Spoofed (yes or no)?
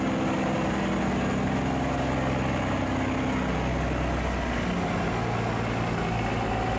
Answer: no